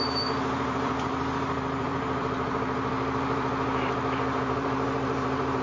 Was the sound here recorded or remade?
remade